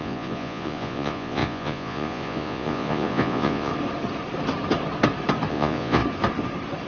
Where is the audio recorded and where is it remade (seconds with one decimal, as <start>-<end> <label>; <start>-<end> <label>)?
0.0-3.7 remade; 3.7-5.5 recorded; 5.5-6.0 remade; 6.0-6.9 recorded